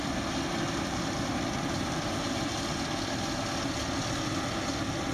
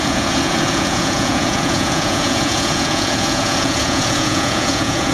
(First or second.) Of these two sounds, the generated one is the second